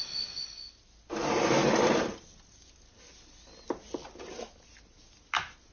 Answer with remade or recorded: recorded